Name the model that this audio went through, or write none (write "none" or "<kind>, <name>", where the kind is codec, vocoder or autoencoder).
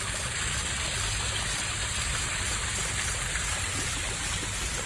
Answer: none